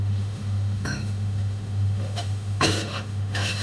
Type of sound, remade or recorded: remade